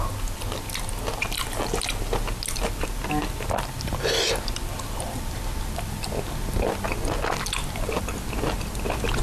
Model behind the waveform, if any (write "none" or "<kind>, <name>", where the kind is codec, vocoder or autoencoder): none